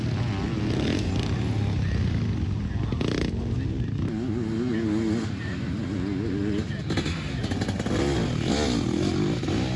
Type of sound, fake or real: real